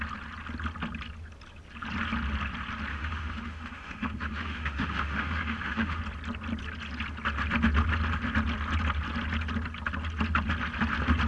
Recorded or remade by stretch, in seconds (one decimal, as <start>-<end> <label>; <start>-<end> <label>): 0.0-2.9 recorded; 2.9-6.0 remade; 6.0-11.3 recorded